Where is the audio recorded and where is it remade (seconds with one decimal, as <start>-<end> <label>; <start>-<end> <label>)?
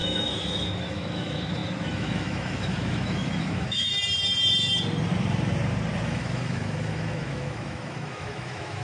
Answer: 0.0-3.9 remade; 3.9-6.1 recorded; 6.1-8.8 remade